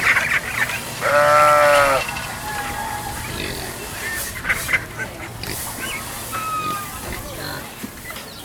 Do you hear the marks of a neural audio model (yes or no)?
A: no